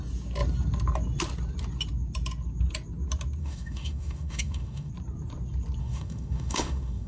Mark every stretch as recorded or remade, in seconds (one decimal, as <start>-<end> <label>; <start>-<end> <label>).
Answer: 0.0-3.4 recorded; 3.4-4.9 remade; 4.9-5.8 recorded; 5.8-7.1 remade